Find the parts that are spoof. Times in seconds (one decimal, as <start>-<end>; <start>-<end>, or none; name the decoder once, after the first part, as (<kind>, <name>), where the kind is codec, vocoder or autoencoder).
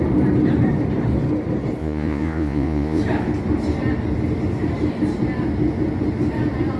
1.8-3.0 (vocoder, Vocos)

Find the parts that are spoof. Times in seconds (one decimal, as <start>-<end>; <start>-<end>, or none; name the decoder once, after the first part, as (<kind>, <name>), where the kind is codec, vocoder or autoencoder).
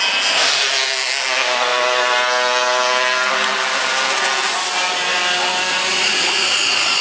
5.7-7.0 (vocoder, Vocos)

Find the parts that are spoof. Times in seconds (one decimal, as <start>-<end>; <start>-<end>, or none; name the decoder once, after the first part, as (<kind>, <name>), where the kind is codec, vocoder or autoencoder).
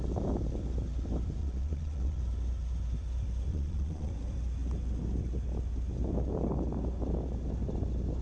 1.4-2.2 (vocoder, Vocos); 3.5-4.1